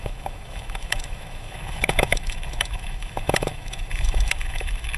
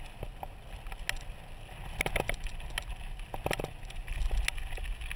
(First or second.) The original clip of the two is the second